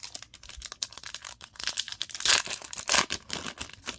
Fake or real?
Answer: real